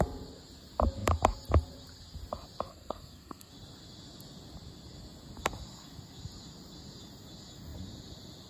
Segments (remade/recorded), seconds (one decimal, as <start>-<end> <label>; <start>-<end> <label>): 0.0-2.7 recorded; 2.7-3.5 remade; 3.5-8.5 recorded